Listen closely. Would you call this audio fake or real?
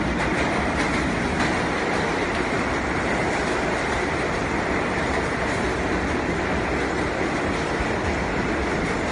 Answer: real